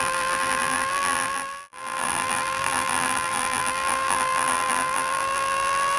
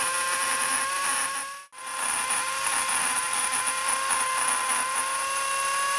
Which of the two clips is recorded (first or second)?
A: second